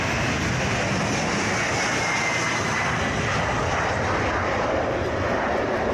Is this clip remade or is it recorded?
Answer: recorded